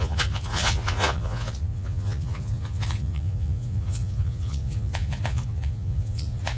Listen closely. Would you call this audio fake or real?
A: fake